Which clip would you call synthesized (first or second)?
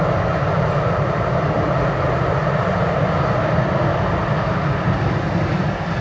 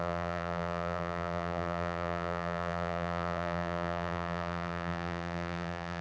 second